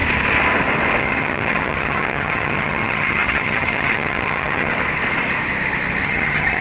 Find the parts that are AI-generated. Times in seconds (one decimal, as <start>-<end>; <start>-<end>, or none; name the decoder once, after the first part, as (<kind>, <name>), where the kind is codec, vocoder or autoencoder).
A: 1.0-4.7 (vocoder, HiFi-GAN); 6.0-6.6